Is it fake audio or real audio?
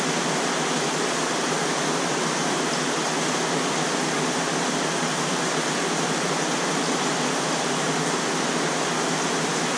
real